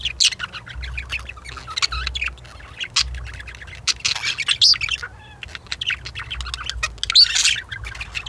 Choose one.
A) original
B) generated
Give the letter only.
A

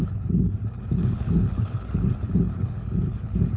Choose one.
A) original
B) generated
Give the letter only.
B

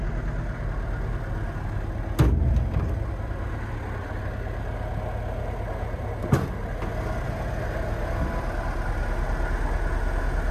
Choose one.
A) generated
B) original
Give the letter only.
B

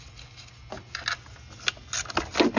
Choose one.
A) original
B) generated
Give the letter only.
A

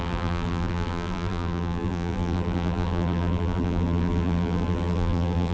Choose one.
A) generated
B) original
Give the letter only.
A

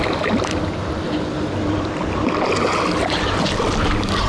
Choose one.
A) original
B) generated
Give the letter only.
A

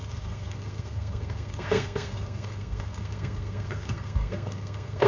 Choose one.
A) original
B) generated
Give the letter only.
B